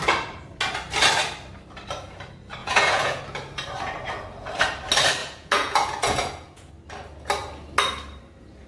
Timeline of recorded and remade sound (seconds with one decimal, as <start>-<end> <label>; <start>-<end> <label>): 0.0-2.6 recorded; 2.6-3.2 remade; 3.2-5.2 recorded; 5.2-6.7 remade; 6.7-8.7 recorded